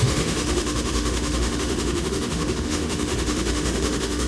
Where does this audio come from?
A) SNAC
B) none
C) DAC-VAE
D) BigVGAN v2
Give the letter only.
C